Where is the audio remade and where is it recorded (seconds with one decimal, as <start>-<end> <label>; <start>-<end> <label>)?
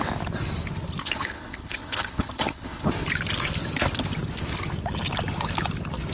0.0-1.0 recorded; 1.0-2.9 remade; 2.9-6.1 recorded